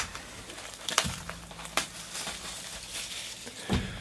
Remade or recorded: remade